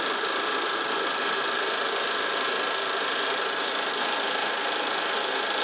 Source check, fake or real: real